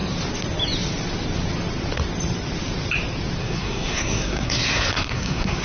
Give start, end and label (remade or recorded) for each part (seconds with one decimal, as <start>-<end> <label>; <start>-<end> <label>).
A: 0.0-3.4 recorded; 3.4-5.6 remade